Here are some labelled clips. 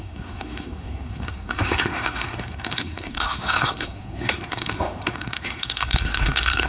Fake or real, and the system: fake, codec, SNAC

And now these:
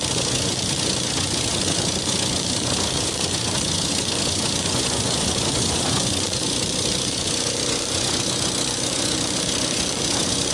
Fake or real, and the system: fake, vocoder, Vocos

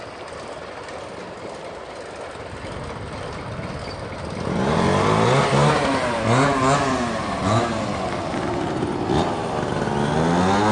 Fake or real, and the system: real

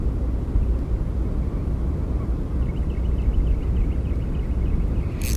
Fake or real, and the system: real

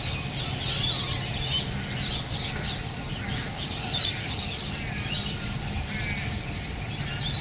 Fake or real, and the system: real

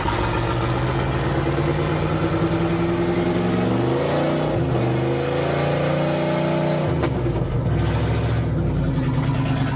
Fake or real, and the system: real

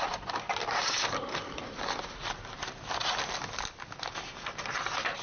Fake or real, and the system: real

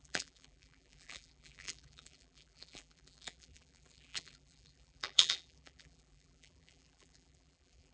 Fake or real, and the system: fake, vocoder, BigVGAN v2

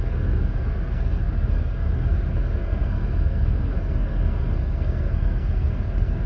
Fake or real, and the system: fake, codec, SNAC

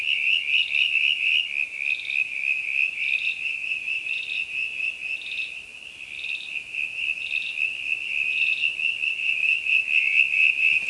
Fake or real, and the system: real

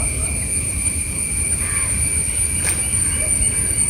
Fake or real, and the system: real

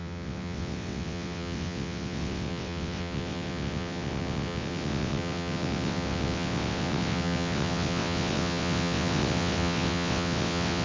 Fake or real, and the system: fake, vocoder, WaveNeXt